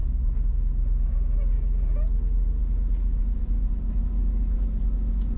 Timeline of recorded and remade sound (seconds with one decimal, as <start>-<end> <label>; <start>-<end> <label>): 0.0-5.4 recorded